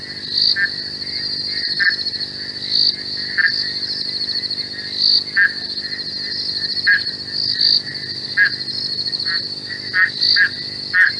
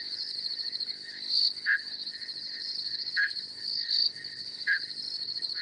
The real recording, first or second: first